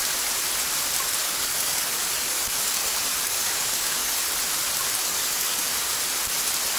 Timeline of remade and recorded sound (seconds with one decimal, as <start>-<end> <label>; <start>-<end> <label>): 0.0-1.2 recorded; 1.2-4.2 remade; 4.2-5.0 recorded; 5.0-5.8 remade; 5.8-6.8 recorded